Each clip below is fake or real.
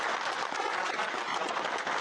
real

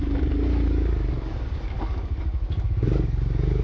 fake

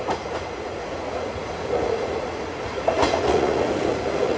fake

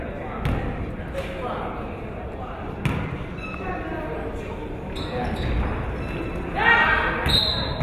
real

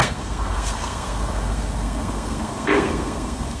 fake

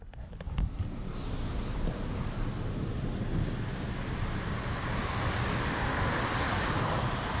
real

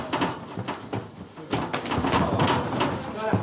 real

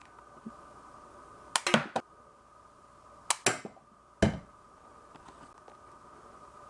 real